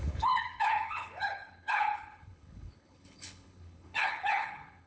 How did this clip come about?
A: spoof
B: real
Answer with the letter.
A